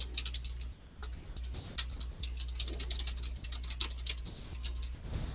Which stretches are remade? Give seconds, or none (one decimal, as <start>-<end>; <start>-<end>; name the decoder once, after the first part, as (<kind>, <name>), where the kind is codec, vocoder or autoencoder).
none